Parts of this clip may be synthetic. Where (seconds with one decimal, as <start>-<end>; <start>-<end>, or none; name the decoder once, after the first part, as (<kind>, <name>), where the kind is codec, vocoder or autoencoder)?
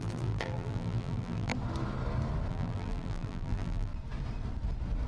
0.0-1.5 (vocoder, BigVGAN v2); 2.5-3.9